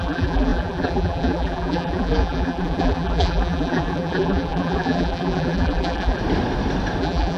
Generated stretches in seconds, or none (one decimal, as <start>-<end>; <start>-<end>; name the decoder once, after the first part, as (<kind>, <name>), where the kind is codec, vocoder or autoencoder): 0.0-6.2 (vocoder, BigVGAN v2); 7.0-7.4